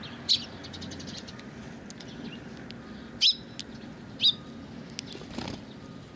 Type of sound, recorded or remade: recorded